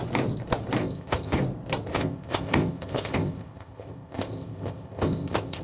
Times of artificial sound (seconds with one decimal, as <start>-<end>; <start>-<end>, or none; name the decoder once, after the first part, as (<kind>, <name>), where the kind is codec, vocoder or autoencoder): 0.8-1.4 (codec, ZipCodec); 1.9-5.6